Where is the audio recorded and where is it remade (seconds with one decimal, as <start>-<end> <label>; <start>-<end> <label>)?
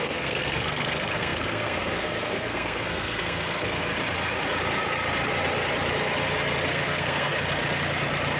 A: 0.0-3.9 remade; 3.9-6.7 recorded; 6.7-7.3 remade; 7.3-8.4 recorded